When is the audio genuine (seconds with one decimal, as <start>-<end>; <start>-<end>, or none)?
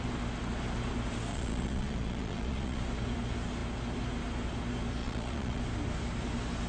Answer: 0.0-1.3; 2.8-5.0; 5.6-6.7